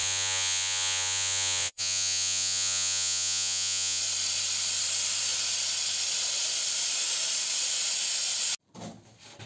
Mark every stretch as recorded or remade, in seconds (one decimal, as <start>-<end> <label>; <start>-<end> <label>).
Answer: 0.0-4.0 remade; 4.0-9.5 recorded